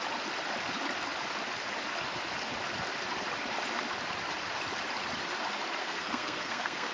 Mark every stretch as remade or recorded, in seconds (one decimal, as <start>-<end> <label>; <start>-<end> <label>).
0.0-5.8 recorded; 5.8-6.9 remade